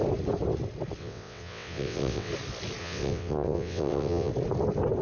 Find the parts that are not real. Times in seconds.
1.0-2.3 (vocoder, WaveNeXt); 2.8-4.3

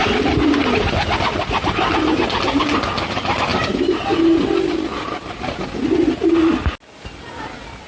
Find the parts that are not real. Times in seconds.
none

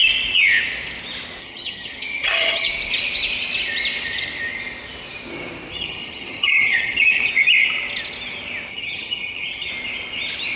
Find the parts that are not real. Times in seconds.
1.4-2.7 (vocoder, HiFi-GAN); 5.7-7.3; 8.7-9.7

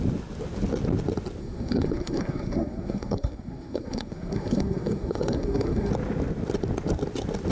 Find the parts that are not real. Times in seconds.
1.4-5.9 (codec, SNAC)

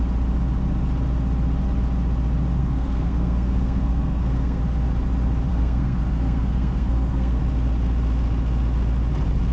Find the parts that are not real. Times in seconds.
2.6-4.6 (codec, SNAC); 5.5-7.4

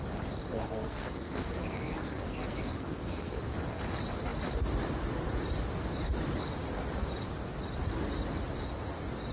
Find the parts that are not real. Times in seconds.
0.5-3.4 (codec, SNAC)

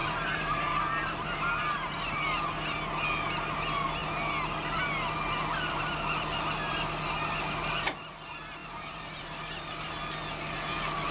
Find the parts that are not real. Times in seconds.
0.0-2.2 (vocoder, BigVGAN v2); 8.6-9.9